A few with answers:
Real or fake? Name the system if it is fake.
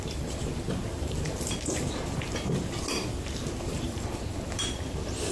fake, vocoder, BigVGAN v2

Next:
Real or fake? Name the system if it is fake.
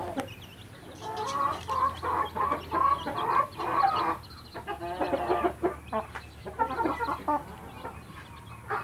real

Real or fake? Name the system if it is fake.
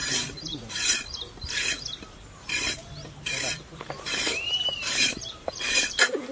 fake, vocoder, BigVGAN v2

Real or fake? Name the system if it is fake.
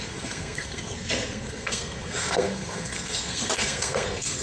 fake, codec, SNAC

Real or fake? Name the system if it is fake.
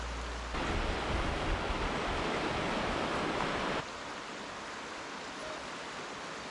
real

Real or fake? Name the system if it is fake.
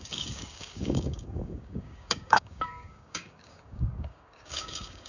fake, codec, DAC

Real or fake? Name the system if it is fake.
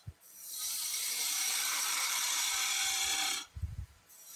fake, vocoder, BigVGAN v2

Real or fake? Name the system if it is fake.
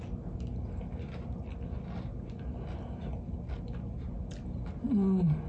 real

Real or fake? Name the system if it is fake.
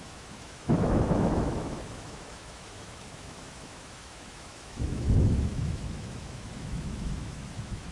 fake, autoencoder, DAC-VAE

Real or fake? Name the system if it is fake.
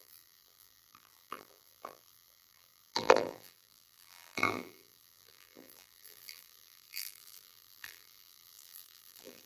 fake, vocoder, BigVGAN v2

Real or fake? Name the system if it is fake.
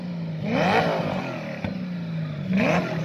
real